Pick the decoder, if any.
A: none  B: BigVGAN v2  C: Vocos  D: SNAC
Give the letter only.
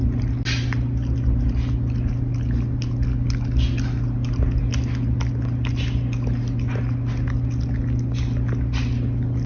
A